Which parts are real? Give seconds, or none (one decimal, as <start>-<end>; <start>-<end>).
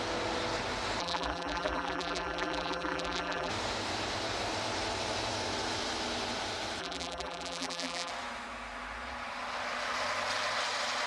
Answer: 0.0-1.0; 3.5-6.8; 8.1-11.1